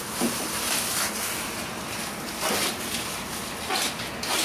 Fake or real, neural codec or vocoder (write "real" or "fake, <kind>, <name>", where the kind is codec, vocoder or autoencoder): real